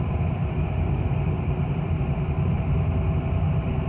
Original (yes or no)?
yes